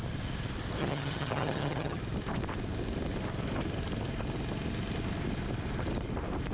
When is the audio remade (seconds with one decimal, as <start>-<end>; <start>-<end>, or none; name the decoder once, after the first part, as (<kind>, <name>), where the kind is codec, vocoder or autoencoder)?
0.8-2.0 (vocoder, HiFi-GAN)